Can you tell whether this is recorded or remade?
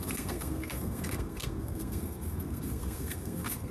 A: remade